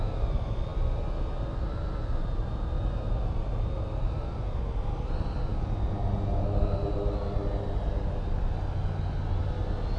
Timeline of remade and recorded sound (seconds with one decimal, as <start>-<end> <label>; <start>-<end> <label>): 0.0-10.0 recorded